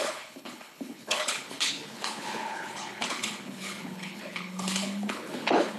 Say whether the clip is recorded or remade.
remade